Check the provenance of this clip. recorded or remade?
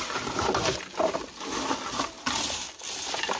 recorded